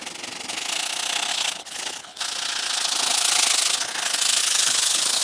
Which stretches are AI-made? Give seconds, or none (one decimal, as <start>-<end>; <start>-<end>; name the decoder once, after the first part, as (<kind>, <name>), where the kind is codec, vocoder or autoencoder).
1.3-2.2 (codec, HILCodec); 4.4-5.2